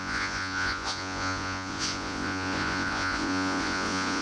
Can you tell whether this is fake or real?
fake